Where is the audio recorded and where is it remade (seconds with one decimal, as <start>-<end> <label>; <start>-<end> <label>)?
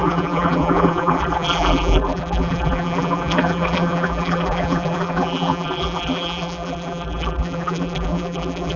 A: 0.0-8.8 remade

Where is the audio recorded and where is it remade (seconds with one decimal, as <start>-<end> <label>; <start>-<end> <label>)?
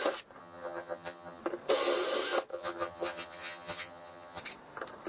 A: 0.0-0.4 recorded; 0.4-1.4 remade; 1.4-2.5 recorded; 2.5-4.4 remade; 4.4-5.1 recorded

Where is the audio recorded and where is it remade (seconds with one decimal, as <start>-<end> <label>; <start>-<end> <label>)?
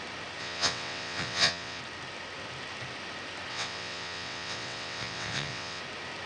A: 0.0-0.4 recorded; 0.4-1.8 remade; 1.8-3.5 recorded; 3.5-5.8 remade; 5.8-6.3 recorded